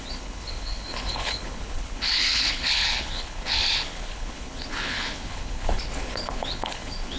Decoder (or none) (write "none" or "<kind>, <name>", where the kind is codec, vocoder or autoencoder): codec, HILCodec